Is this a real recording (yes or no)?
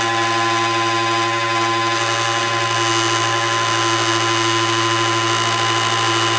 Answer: yes